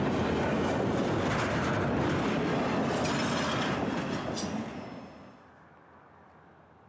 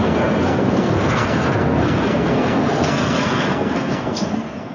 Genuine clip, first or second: first